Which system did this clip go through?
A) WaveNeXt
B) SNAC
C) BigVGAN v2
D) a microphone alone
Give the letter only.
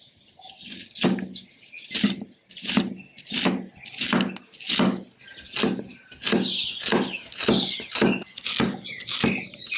D